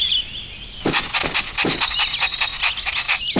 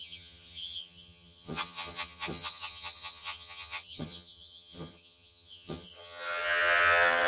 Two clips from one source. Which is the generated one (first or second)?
second